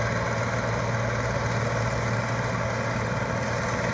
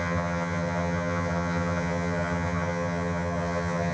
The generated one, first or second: second